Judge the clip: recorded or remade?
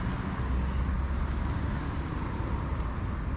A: recorded